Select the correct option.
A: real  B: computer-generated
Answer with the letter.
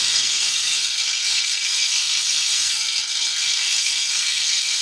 B